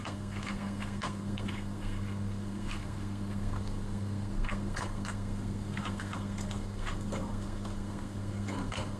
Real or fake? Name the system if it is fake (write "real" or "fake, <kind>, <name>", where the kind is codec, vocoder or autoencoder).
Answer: fake, codec, SNAC